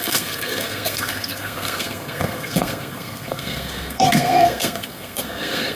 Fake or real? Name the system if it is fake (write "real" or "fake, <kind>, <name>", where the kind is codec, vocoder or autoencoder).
fake, codec, SNAC